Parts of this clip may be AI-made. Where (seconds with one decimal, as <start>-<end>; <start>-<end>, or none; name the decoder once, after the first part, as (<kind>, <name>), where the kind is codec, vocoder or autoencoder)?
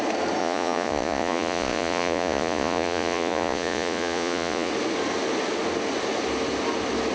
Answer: 0.4-4.7 (vocoder, Vocos)